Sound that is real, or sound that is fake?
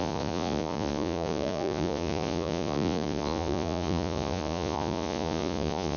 fake